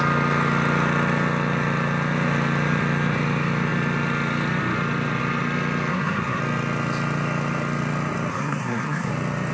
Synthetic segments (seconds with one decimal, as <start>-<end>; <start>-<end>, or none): 5.9-6.4; 8.3-9.1